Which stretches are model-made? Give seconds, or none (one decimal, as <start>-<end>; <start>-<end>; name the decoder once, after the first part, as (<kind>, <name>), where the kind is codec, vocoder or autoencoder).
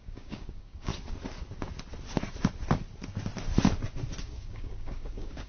0.0-0.9 (codec, DAC); 4.2-5.5